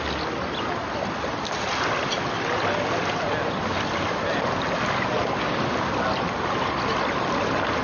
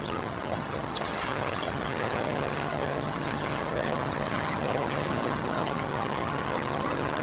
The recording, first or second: first